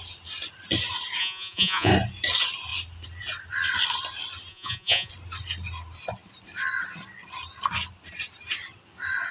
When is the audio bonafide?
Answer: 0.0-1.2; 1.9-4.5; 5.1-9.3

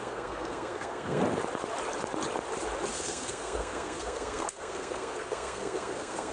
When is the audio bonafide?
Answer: 1.2-2.9

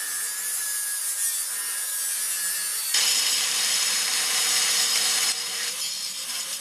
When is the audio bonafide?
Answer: 0.0-2.7; 5.7-6.6

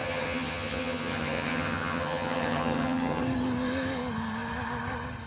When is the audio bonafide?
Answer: 3.2-5.3